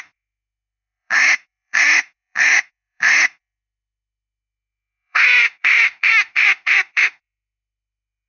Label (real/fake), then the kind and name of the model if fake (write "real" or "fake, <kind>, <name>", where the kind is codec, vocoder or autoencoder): fake, autoencoder, DAC-VAE